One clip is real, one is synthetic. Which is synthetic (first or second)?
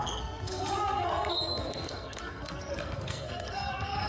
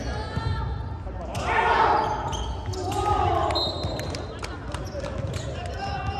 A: first